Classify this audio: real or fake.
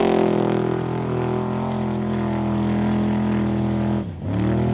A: real